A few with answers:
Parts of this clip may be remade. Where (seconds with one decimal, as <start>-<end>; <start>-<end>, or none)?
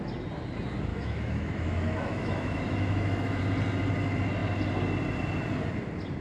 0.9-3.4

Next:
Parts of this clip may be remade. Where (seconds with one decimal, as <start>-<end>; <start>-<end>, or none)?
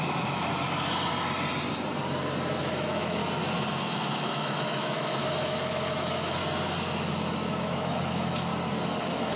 0.0-0.5; 2.6-3.2; 3.8-6.4; 7.3-8.5; 9.0-9.4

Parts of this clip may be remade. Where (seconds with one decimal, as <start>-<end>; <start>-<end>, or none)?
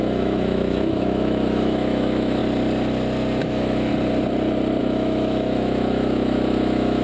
0.0-2.4; 3.4-3.9; 4.8-7.0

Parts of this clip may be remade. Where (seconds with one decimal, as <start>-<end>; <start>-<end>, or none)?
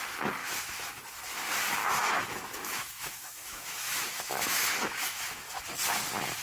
0.4-1.2; 1.8-5.6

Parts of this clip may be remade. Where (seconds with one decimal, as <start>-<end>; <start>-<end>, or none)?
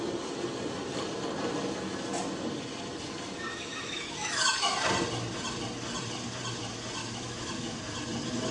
3.5-4.8; 7.0-7.8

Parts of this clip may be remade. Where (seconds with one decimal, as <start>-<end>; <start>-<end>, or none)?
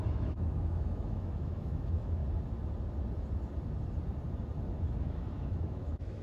0.0-2.2; 5.0-6.2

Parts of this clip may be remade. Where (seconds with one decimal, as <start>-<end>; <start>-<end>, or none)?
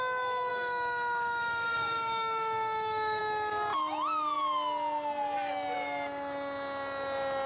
0.5-3.2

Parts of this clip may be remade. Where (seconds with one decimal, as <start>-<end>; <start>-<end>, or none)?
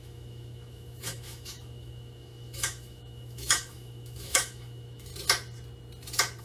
0.0-5.1